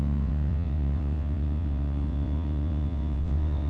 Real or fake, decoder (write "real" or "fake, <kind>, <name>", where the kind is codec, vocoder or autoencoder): fake, vocoder, WaveNeXt